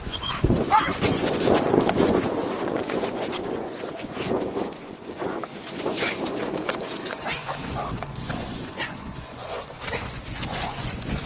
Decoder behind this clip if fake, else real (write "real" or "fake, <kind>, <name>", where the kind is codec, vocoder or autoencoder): fake, vocoder, Vocos